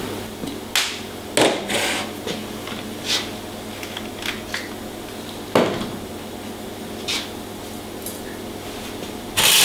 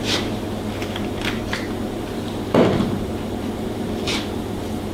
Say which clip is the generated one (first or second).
second